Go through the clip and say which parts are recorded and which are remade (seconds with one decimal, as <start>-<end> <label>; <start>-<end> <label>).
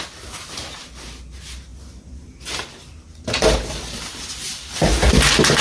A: 0.0-5.6 recorded